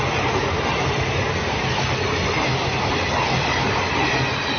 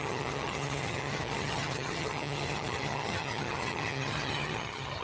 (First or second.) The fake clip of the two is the second